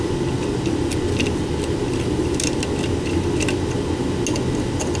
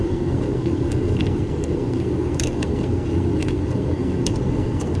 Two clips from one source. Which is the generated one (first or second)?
second